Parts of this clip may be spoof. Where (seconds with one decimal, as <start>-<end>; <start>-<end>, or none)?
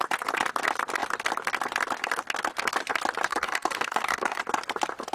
3.3-4.4